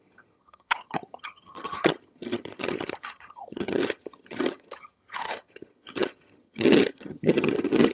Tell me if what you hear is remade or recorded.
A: remade